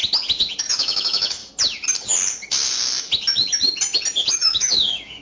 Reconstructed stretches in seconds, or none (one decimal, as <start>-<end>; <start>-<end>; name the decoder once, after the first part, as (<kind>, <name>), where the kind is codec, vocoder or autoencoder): 0.6-1.4 (autoencoder, DAC-VAE); 4.3-5.2